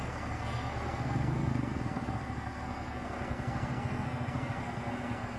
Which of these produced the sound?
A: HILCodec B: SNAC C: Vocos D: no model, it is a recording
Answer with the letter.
B